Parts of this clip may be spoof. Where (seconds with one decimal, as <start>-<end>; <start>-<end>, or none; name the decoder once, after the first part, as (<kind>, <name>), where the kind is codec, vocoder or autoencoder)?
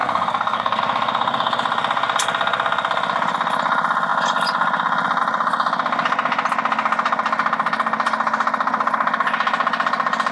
0.0-0.8 (codec, SNAC)